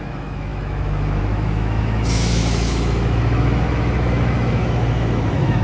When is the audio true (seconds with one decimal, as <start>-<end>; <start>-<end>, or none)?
none